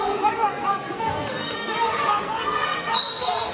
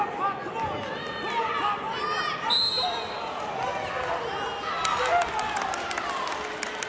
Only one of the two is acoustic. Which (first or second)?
second